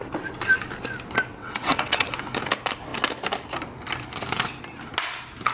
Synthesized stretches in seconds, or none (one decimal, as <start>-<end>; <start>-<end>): 1.3-2.1